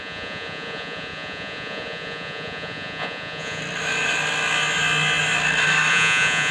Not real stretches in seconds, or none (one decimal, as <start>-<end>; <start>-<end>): 0.0-3.6; 5.9-6.5